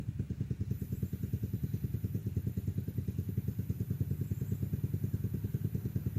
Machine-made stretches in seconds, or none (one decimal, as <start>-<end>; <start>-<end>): 2.2-3.3